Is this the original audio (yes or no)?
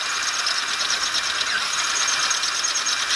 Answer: yes